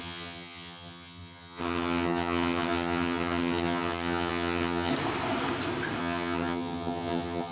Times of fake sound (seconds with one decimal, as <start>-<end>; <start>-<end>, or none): 0.0-4.9; 6.0-7.5